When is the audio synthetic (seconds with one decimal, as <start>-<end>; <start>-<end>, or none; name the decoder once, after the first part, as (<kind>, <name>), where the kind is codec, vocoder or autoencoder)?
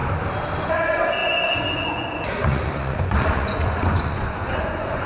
0.7-5.1 (vocoder, Vocos)